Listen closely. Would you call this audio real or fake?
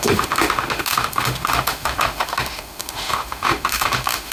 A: fake